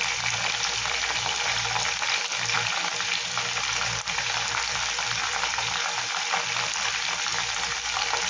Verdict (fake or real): fake